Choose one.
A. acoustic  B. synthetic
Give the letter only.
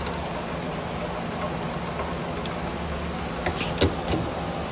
A